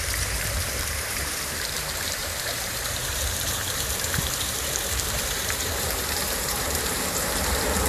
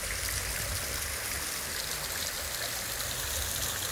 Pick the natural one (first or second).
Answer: second